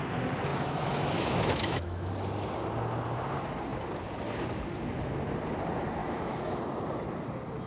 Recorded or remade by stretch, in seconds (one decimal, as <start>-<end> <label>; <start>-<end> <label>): 0.0-0.5 recorded; 0.5-2.1 remade; 2.1-6.0 recorded; 6.0-6.6 remade; 6.6-7.7 recorded